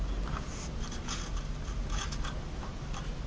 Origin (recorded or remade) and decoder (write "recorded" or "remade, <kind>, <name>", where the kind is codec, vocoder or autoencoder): recorded